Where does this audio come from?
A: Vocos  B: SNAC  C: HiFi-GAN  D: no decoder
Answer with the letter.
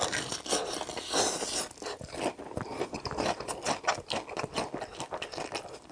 D